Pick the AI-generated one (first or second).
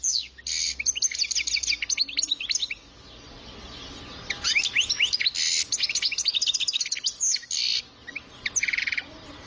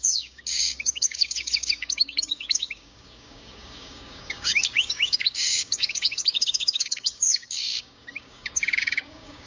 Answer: second